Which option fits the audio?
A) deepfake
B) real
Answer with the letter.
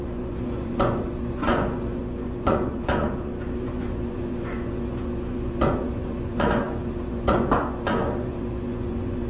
A